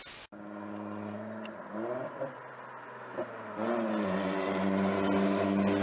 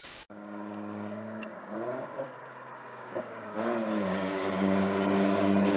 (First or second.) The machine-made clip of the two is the second